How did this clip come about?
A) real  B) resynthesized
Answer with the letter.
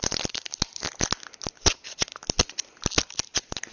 A